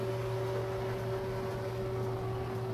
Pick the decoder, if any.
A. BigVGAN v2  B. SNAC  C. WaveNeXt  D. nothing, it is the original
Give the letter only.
D